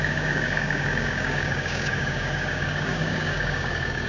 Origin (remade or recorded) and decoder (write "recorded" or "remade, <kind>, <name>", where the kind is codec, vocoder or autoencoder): remade, codec, DAC